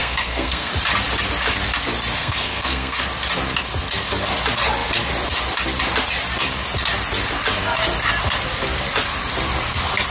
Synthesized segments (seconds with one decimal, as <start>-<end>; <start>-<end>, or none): 0.0-0.7; 2.2-3.0